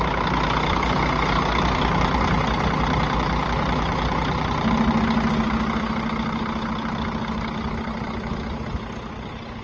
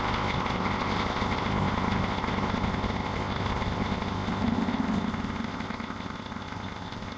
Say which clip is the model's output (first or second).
second